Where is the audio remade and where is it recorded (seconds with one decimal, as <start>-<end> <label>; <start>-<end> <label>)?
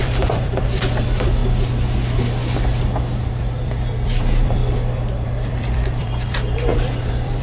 0.0-1.4 remade; 1.4-3.2 recorded; 3.2-7.4 remade